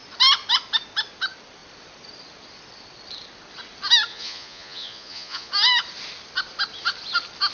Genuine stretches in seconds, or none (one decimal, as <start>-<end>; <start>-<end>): 0.0-4.1; 5.5-7.5